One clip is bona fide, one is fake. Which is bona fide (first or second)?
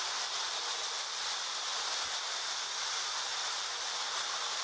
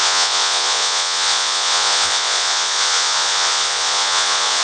first